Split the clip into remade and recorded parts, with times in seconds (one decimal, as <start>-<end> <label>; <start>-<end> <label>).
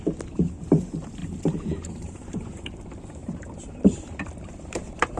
0.0-1.2 recorded; 1.2-2.7 remade; 2.7-3.2 recorded; 3.2-5.2 remade